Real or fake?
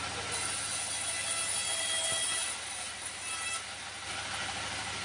real